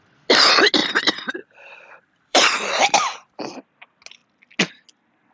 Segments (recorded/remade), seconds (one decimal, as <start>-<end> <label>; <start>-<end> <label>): 0.0-0.8 recorded; 0.8-3.5 remade; 3.5-5.3 recorded